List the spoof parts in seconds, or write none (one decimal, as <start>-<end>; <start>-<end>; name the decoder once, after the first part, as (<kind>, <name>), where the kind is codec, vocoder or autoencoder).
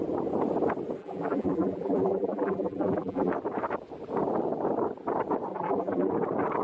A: 1.0-3.3 (vocoder, BigVGAN v2); 5.5-6.1